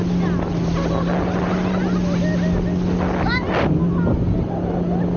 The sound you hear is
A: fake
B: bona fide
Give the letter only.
B